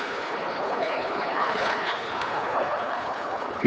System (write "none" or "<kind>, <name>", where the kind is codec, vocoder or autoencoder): codec, HILCodec